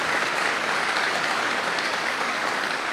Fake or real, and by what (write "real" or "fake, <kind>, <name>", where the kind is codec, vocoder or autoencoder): fake, codec, DAC